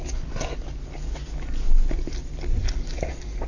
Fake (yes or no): no